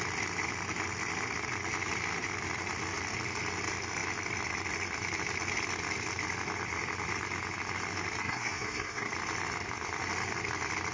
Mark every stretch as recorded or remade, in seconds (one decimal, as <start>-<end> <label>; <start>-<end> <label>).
0.0-8.2 recorded; 8.2-9.1 remade; 9.1-10.9 recorded